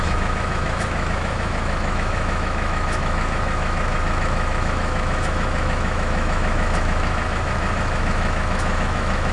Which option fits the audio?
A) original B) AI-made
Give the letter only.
B